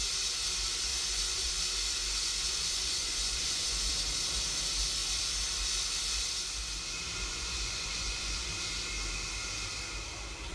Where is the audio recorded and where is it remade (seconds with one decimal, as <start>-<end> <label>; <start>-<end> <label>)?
0.0-0.9 recorded; 0.9-1.5 remade; 1.5-2.0 recorded; 2.0-3.9 remade; 3.9-7.3 recorded; 7.3-8.5 remade; 8.5-10.5 recorded